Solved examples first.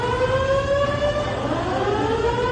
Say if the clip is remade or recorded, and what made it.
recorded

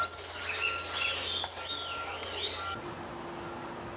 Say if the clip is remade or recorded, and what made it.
recorded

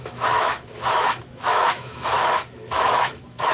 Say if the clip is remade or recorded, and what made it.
remade, autoencoder, DAC-VAE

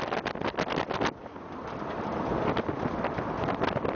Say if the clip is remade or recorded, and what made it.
recorded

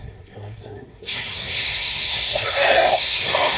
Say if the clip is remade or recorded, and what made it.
remade, codec, SNAC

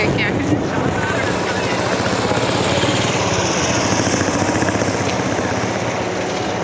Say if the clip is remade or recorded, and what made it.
recorded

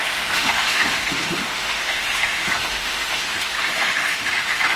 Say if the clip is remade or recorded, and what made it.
remade, autoencoder, DAC-VAE